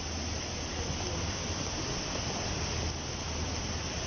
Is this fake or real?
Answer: real